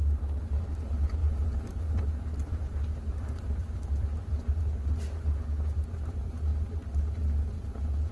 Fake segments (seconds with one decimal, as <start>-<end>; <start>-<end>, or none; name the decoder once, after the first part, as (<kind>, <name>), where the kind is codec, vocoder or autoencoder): 1.2-2.0 (vocoder, BigVGAN v2); 2.4-4.6